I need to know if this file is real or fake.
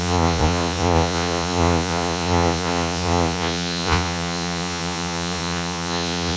fake